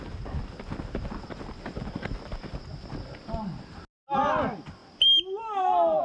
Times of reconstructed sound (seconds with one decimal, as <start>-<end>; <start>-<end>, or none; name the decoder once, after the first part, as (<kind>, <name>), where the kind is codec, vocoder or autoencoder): none